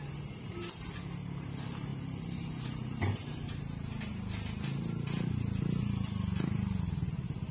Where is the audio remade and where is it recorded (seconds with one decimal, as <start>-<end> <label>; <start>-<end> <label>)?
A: 0.0-4.1 remade; 4.1-6.8 recorded; 6.8-7.5 remade